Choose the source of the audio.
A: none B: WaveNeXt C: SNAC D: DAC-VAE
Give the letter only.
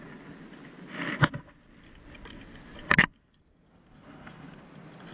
A